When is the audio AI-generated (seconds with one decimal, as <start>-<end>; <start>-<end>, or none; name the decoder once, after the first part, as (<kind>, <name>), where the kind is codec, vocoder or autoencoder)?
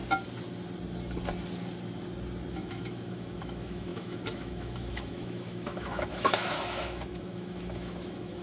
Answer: 2.5-8.4 (autoencoder, DAC-VAE)